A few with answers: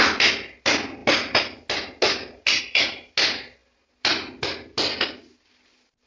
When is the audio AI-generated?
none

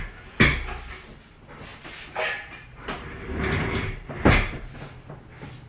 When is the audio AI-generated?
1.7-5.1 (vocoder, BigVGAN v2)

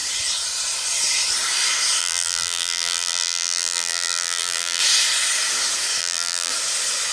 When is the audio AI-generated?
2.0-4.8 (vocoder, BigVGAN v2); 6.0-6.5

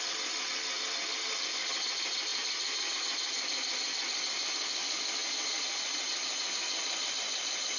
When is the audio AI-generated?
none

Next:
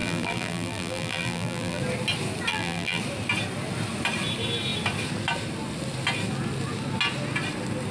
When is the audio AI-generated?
0.0-1.8 (vocoder, BigVGAN v2); 2.5-3.0

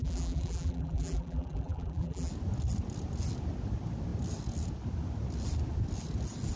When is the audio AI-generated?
0.0-2.3 (vocoder, BigVGAN v2)

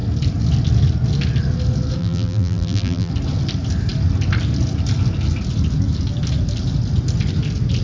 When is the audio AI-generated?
2.0-3.1 (vocoder, BigVGAN v2)

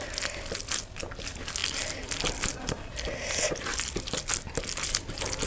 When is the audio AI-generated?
1.6-4.9 (vocoder, BigVGAN v2)